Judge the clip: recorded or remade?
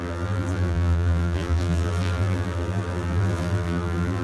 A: remade